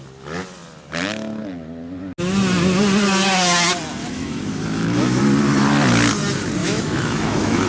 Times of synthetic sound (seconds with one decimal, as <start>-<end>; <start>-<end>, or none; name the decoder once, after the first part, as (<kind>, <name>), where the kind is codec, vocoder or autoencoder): 4.0-5.2 (autoencoder, DAC-VAE); 6.6-7.7